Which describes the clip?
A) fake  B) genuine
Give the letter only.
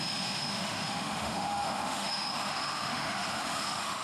A